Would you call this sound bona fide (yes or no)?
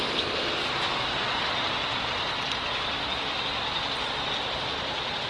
yes